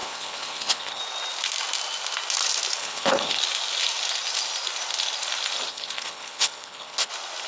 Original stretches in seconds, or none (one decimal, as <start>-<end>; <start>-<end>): 1.0-2.8; 3.4-5.7; 7.1-7.5